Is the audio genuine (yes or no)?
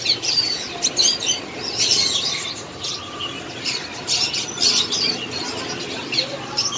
yes